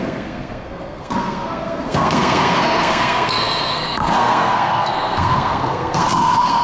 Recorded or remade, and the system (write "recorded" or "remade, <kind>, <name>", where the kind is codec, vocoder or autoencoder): remade, codec, SNAC